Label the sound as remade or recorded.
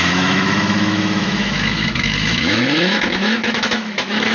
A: remade